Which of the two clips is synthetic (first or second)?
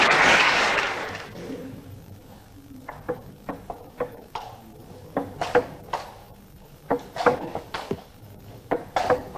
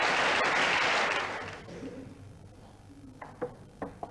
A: first